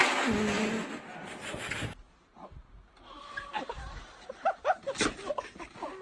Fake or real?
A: real